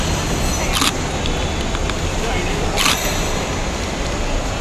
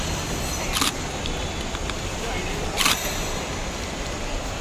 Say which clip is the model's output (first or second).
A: second